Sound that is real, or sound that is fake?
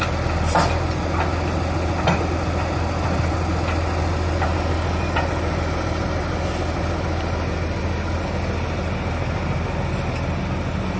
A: real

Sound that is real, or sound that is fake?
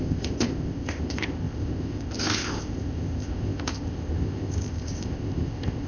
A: fake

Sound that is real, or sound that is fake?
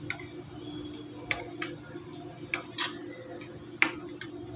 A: real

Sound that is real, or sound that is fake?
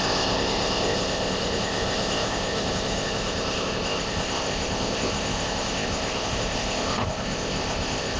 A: fake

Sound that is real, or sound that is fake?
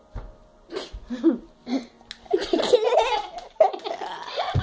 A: real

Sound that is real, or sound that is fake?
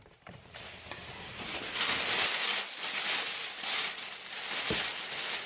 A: real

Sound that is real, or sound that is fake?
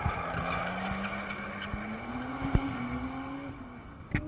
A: real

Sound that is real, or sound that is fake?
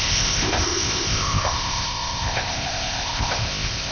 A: fake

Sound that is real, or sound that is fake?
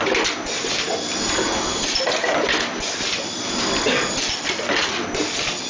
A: real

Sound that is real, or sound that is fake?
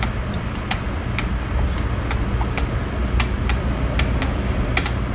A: real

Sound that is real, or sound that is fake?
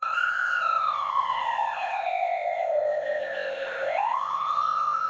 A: fake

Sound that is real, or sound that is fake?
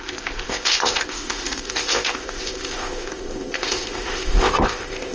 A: fake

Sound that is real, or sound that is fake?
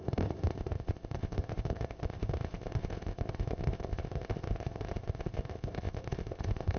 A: fake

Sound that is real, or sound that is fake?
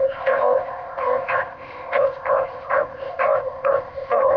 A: fake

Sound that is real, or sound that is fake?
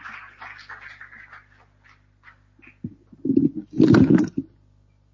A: real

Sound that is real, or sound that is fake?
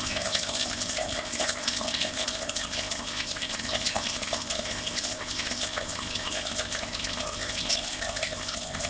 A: fake